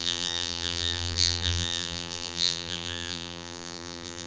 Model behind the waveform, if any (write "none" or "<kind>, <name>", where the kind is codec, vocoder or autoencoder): vocoder, BigVGAN v2